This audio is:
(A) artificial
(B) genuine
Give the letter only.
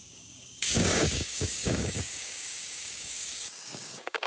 A